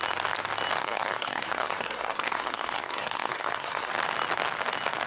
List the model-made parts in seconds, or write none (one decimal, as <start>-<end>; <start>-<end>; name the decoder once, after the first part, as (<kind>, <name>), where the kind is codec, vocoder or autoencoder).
0.8-3.9 (codec, SNAC)

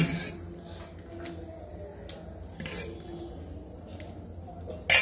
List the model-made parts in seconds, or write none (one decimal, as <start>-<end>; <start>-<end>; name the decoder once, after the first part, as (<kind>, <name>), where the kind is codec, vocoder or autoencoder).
none